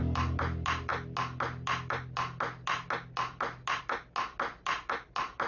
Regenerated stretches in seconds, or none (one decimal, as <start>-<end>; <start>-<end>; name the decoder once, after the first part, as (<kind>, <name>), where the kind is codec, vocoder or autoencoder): none